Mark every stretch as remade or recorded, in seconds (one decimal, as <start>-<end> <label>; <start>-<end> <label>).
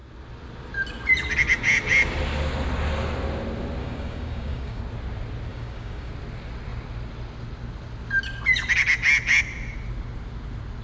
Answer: 0.0-3.8 recorded; 3.8-4.8 remade; 4.8-5.5 recorded; 5.5-6.1 remade; 6.1-10.8 recorded